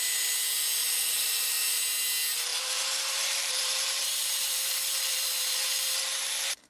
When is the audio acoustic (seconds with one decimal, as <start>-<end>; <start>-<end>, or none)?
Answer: 0.0-0.8; 1.8-2.5